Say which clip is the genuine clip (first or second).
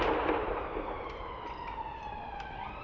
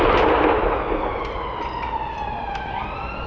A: second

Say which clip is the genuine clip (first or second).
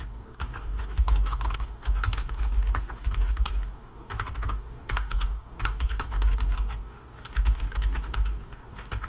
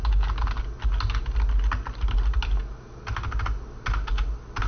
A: second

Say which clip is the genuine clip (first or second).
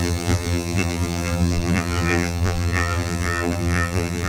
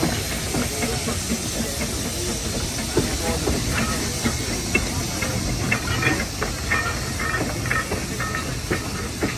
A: second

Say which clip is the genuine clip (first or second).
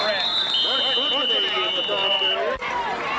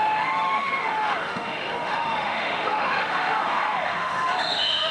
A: first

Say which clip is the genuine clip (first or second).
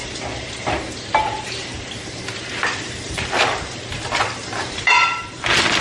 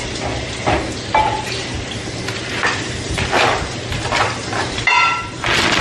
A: second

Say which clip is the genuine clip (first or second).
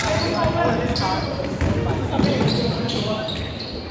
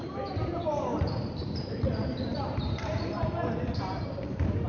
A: first